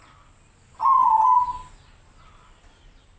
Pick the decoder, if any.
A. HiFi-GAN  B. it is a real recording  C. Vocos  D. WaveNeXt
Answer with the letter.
B